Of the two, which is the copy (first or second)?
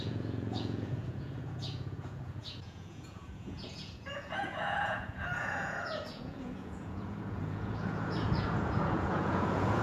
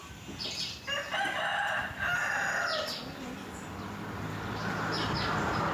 first